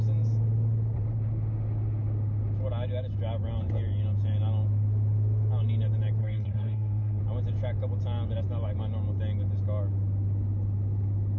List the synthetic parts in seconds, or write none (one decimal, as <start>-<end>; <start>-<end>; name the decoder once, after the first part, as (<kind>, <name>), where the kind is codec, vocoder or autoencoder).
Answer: 6.2-7.2 (codec, SNAC)